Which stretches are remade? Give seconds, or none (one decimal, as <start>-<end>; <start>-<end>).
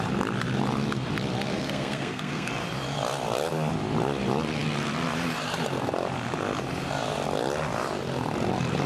1.5-2.5